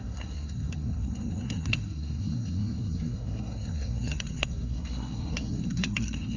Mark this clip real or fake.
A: fake